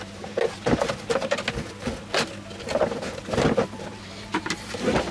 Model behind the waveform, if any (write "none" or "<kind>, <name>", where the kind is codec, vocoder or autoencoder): none